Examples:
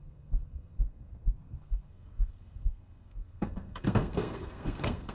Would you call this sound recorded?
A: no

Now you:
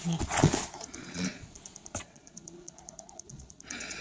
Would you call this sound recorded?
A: no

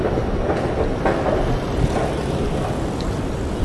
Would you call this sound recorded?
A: yes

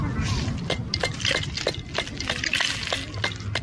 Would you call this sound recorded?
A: yes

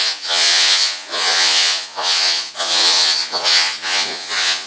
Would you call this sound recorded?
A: no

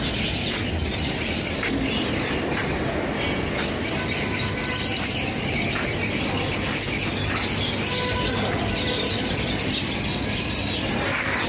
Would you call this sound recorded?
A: yes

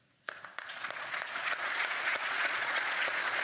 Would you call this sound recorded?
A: no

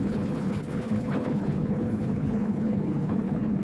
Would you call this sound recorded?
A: no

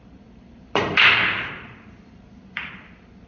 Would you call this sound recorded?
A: no